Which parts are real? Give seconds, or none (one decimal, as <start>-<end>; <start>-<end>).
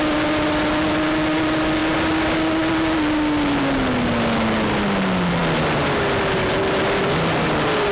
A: 0.0-7.9